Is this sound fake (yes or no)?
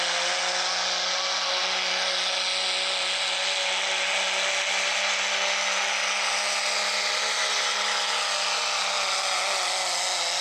no